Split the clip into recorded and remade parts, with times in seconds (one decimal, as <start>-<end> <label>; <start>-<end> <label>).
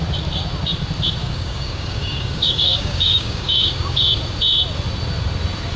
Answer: 0.0-1.2 recorded; 1.2-4.2 remade; 4.2-5.8 recorded